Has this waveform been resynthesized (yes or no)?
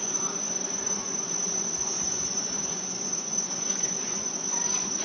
yes